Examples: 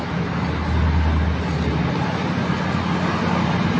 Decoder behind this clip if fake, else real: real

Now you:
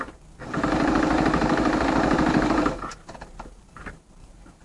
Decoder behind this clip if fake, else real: fake, vocoder, BigVGAN v2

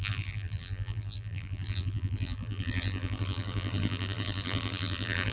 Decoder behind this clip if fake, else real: fake, vocoder, BigVGAN v2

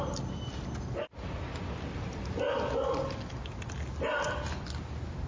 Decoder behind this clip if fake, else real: real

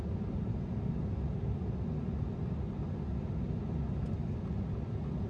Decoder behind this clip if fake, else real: real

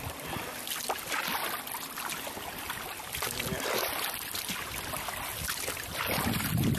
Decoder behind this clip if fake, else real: real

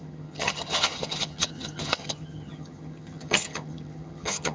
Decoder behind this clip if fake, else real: fake, vocoder, HiFi-GAN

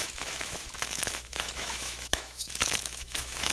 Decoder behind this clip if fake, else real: fake, autoencoder, DAC-VAE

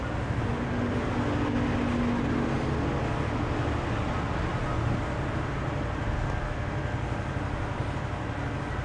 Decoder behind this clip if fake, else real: real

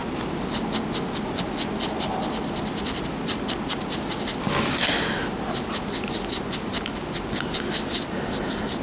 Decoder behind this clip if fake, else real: real